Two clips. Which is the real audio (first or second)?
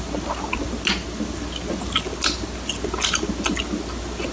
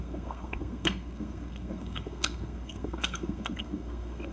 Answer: first